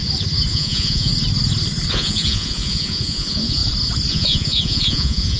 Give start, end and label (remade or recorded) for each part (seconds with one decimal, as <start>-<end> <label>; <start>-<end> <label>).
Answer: 0.0-0.5 recorded; 0.5-1.1 remade; 1.1-1.9 recorded; 1.9-3.6 remade; 3.6-4.1 recorded; 4.1-5.4 remade